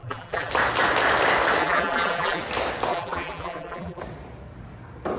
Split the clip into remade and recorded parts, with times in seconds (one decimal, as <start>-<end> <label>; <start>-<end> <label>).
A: 0.0-0.5 remade; 0.5-1.6 recorded; 1.6-2.4 remade; 2.4-2.9 recorded; 2.9-4.0 remade; 4.0-5.2 recorded